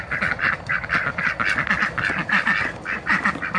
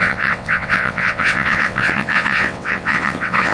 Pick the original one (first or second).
first